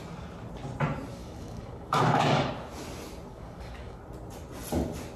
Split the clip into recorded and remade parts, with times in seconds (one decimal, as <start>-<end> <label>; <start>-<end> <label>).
0.0-1.1 recorded; 1.1-2.5 remade; 2.5-3.3 recorded; 3.3-4.0 remade; 4.0-5.2 recorded